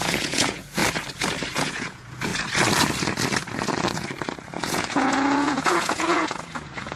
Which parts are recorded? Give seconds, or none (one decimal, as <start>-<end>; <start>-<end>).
0.8-1.6; 2.3-4.6